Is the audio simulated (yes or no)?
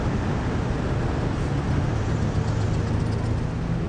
no